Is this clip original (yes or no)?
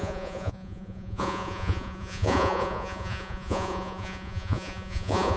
no